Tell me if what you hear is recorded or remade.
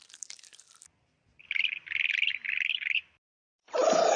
recorded